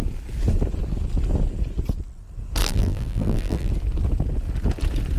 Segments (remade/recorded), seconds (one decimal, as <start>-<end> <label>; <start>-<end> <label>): 0.0-2.6 recorded; 2.6-3.7 remade; 3.7-5.2 recorded